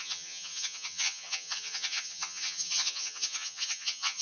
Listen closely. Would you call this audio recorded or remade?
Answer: remade